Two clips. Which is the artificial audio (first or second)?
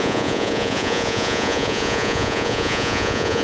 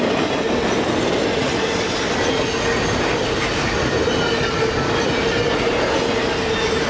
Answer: first